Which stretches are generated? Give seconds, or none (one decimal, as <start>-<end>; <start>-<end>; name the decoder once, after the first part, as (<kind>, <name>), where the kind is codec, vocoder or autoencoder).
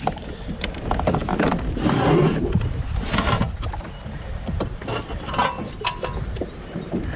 none